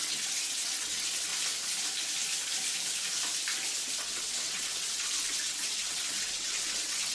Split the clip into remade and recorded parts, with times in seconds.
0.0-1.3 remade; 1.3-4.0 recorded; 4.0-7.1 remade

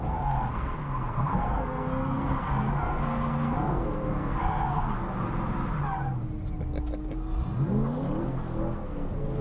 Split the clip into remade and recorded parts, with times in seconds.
0.0-5.0 remade; 5.0-8.2 recorded; 8.2-9.4 remade

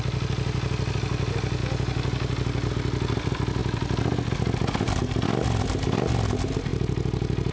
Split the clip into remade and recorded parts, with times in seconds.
0.0-7.5 recorded

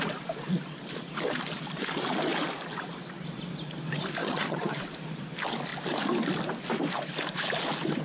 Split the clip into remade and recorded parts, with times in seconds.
0.0-4.2 recorded; 4.2-4.8 remade; 4.8-8.0 recorded

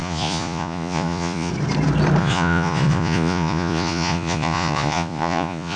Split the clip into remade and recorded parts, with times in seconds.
0.0-1.5 remade; 1.5-2.2 recorded; 2.2-5.8 remade

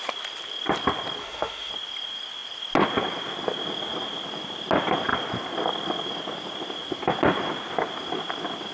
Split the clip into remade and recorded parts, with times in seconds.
0.0-1.2 recorded; 1.2-1.7 remade; 1.7-8.7 recorded